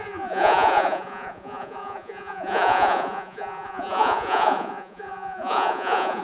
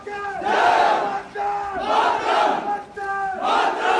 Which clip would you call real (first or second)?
second